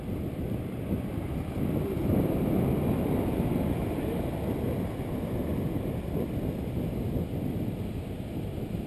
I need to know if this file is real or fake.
real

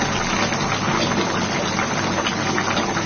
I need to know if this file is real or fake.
real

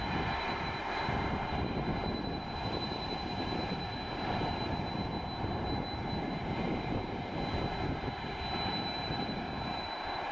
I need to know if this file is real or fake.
fake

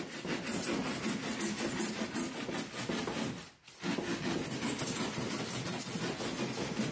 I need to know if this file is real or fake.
real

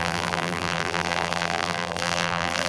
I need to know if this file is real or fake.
fake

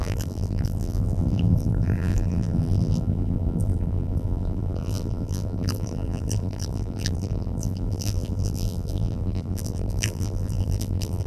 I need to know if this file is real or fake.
fake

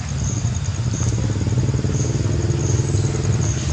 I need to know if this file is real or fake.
real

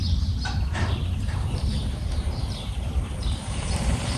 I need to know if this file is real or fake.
fake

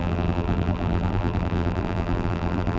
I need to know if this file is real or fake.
fake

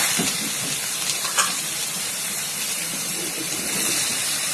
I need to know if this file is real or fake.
fake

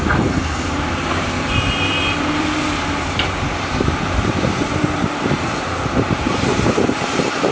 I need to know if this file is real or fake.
fake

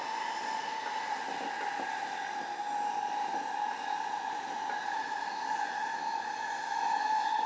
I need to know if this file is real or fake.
real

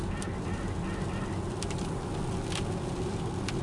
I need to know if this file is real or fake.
real